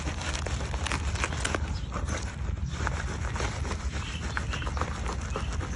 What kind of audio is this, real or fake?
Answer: real